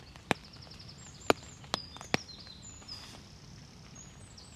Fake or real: real